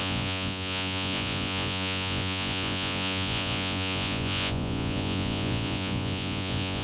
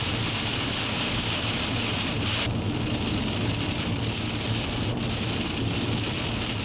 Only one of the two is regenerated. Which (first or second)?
first